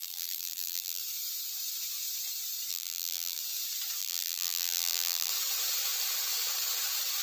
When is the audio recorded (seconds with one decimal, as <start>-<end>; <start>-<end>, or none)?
1.0-2.7; 3.4-4.0; 5.3-7.2